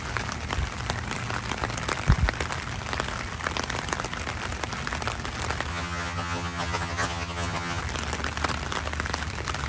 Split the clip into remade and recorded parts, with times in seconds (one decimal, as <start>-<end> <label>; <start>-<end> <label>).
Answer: 0.0-5.7 recorded; 5.7-7.8 remade; 7.8-9.7 recorded